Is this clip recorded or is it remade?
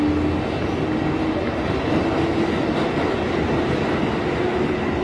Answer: recorded